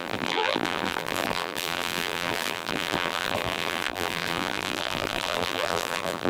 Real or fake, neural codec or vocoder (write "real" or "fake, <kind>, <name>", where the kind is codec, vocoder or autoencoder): fake, vocoder, BigVGAN v2